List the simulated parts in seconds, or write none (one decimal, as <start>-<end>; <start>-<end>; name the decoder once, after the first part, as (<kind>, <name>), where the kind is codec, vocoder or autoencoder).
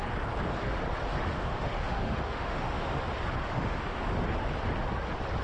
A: 1.3-3.0 (autoencoder, DAC-VAE); 3.4-4.0